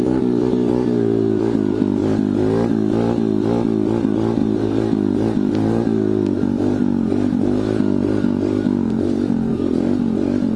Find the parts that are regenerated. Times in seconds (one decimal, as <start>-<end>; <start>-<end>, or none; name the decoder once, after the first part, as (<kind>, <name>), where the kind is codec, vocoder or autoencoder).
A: 0.0-2.0 (vocoder, BigVGAN v2); 4.0-10.6